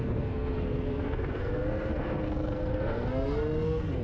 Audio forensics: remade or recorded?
remade